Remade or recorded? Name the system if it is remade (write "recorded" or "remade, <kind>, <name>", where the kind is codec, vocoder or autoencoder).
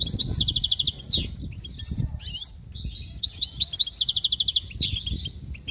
recorded